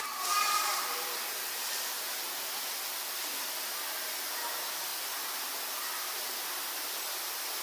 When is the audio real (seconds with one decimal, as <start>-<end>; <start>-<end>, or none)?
0.0-0.7; 3.7-7.6